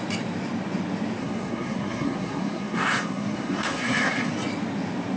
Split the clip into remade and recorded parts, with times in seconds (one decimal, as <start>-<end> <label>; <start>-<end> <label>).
0.0-1.2 recorded; 1.2-4.3 remade; 4.3-5.2 recorded